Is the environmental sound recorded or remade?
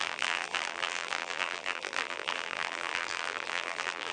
remade